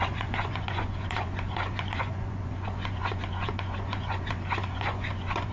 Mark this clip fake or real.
fake